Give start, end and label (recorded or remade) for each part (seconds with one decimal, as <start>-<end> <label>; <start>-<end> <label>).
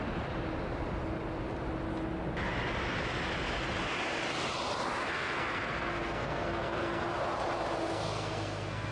0.0-5.0 recorded; 5.0-7.0 remade; 7.0-7.9 recorded; 7.9-8.9 remade